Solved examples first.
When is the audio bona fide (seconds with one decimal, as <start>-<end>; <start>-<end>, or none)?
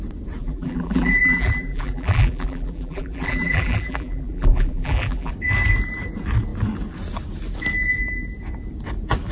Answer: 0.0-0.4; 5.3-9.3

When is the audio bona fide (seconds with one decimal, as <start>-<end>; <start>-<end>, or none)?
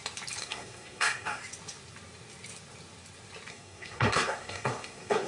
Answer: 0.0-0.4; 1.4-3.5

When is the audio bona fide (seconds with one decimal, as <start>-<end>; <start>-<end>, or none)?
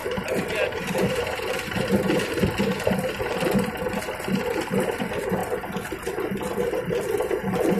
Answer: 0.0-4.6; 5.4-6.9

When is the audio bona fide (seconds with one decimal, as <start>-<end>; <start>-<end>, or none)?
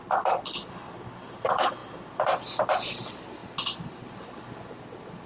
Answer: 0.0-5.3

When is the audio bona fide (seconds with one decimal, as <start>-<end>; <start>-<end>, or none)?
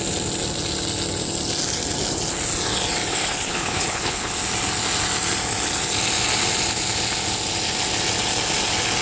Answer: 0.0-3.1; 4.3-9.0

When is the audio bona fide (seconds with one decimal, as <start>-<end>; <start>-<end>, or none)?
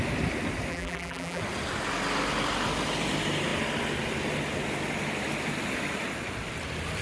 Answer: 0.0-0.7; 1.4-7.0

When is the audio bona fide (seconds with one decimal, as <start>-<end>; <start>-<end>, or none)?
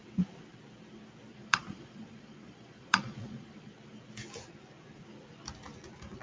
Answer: 0.0-1.3; 3.7-6.2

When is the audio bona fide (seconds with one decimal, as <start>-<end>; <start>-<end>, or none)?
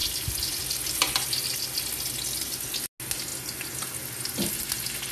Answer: 0.0-5.1